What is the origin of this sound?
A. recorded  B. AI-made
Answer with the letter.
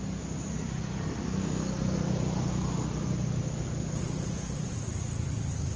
A